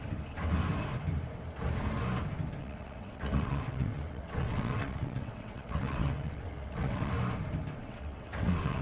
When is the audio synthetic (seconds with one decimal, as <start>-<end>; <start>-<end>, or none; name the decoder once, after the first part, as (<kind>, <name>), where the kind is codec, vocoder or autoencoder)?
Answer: 2.6-7.1 (vocoder, WaveNeXt); 7.8-8.8